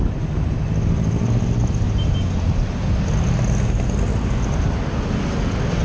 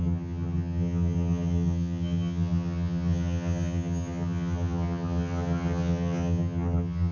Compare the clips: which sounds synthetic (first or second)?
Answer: second